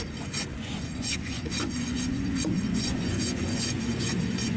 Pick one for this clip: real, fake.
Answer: fake